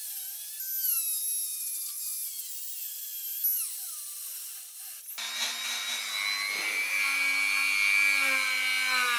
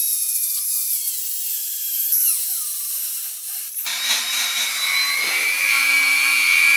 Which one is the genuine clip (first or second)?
first